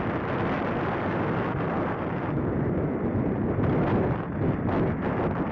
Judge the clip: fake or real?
real